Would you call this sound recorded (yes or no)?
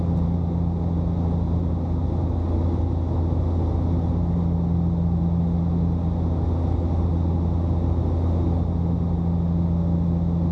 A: yes